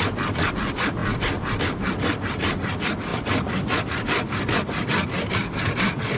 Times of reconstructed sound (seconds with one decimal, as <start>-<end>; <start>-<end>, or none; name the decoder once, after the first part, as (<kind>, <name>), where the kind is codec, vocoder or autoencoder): none